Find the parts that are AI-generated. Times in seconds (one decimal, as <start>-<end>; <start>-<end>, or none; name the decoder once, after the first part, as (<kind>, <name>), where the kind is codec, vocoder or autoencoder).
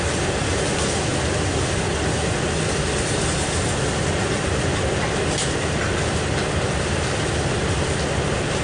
none